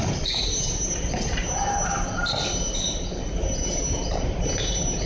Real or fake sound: real